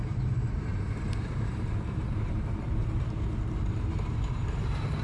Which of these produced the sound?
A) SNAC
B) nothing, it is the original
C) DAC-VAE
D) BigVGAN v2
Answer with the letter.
D